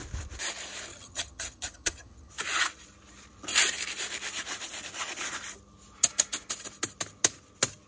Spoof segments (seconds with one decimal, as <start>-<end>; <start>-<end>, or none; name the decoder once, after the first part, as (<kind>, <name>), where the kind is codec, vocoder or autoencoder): 0.9-2.3 (vocoder, HiFi-GAN)

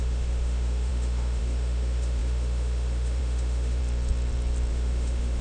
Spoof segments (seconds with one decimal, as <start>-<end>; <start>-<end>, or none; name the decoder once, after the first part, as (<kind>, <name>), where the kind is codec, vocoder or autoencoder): 0.0-3.8 (autoencoder, DAC-VAE); 4.7-5.4

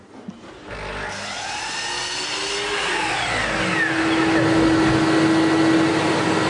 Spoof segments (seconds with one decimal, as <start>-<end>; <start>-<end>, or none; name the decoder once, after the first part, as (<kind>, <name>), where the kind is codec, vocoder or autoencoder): none

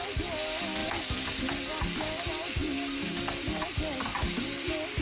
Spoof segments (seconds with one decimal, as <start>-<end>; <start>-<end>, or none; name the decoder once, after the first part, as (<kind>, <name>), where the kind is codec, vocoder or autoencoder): 0.8-1.4 (vocoder, BigVGAN v2)